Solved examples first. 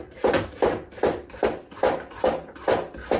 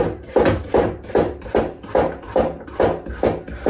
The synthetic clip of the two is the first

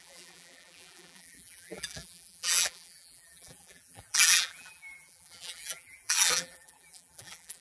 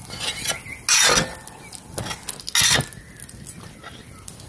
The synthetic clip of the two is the first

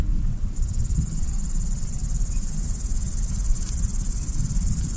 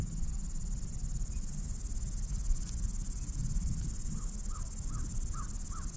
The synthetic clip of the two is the first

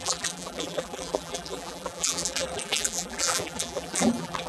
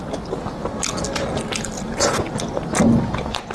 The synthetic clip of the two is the first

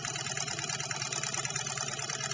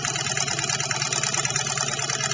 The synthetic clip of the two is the first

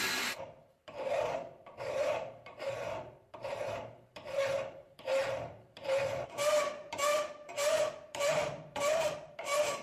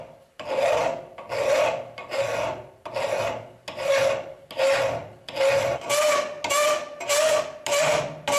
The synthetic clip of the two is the first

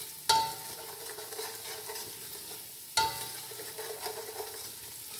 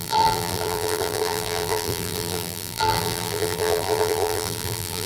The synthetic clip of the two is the second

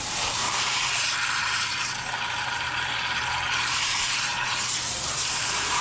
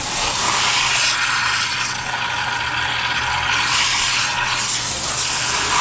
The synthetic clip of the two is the first